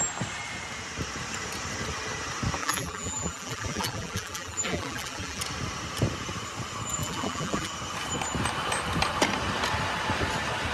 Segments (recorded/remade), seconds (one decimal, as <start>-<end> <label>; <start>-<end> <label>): 0.0-2.6 recorded; 2.6-5.4 remade; 5.4-7.0 recorded; 7.0-7.7 remade; 7.7-10.7 recorded

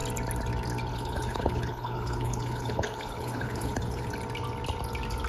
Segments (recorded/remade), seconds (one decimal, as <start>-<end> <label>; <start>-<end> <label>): 0.0-0.9 recorded; 0.9-4.1 remade; 4.1-5.3 recorded

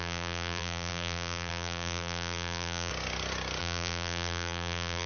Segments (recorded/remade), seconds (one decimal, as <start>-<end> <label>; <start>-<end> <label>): 0.0-2.9 remade; 2.9-3.6 recorded; 3.6-5.1 remade